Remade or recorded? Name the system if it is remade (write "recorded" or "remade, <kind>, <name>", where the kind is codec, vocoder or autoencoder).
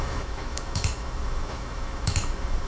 remade, autoencoder, DAC-VAE